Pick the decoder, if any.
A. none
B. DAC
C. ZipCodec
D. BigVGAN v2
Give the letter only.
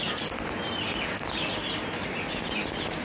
A